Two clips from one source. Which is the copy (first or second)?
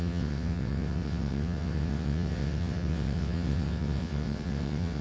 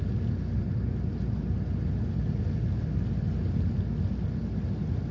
first